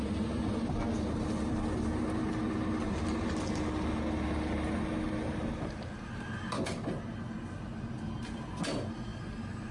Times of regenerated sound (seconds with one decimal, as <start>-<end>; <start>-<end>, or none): none